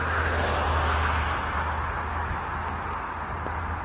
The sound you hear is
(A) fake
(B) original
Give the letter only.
B